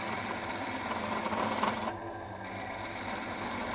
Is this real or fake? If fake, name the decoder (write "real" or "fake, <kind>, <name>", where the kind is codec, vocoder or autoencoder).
real